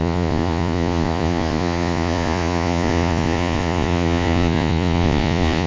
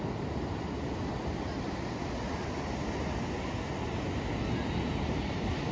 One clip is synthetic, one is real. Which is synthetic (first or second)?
first